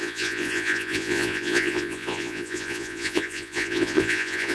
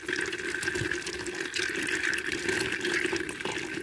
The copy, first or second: first